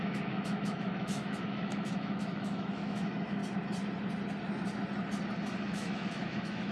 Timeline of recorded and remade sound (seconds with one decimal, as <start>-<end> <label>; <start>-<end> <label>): 0.0-3.4 remade; 3.4-5.6 recorded; 5.6-6.7 remade